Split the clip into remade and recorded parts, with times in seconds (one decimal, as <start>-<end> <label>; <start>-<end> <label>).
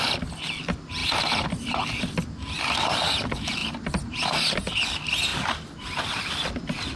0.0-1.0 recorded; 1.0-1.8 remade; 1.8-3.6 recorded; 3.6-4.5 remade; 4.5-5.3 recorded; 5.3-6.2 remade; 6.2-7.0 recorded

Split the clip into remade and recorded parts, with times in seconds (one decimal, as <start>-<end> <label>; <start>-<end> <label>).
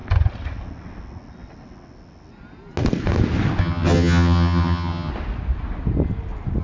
0.0-3.6 recorded; 3.6-5.1 remade; 5.1-6.6 recorded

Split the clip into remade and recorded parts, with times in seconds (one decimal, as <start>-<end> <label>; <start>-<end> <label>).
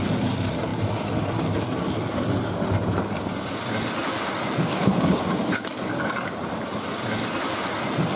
0.0-4.7 recorded; 4.7-5.2 remade; 5.2-8.2 recorded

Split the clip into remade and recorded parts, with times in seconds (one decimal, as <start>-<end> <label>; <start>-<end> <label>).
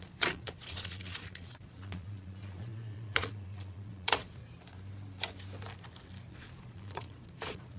0.0-4.4 remade; 4.4-6.3 recorded; 6.3-7.8 remade